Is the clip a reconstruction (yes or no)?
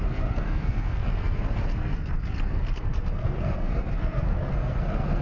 yes